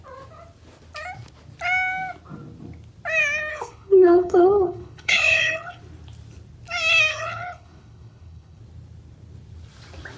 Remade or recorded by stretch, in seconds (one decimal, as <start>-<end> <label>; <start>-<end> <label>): 0.0-3.5 recorded; 3.5-5.8 remade; 5.8-7.1 recorded; 7.1-8.6 remade; 8.6-10.2 recorded